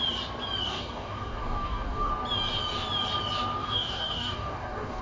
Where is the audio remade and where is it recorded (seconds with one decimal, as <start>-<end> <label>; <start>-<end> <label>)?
0.0-0.6 recorded; 0.6-2.1 remade; 2.1-3.6 recorded; 3.6-5.0 remade